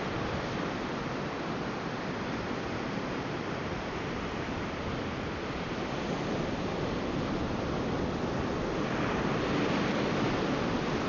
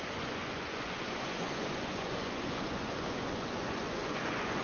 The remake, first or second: second